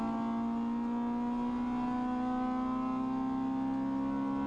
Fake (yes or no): no